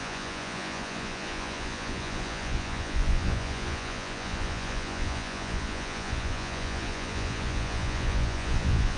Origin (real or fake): fake